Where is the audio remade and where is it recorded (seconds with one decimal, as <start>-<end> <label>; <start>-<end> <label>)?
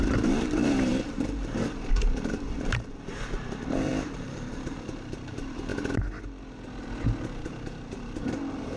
0.0-5.7 remade; 5.7-8.2 recorded; 8.2-8.8 remade